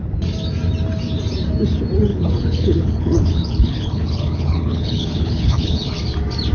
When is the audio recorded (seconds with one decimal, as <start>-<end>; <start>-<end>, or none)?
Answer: 0.0-2.1; 6.0-6.5